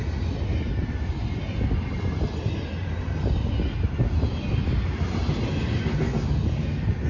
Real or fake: real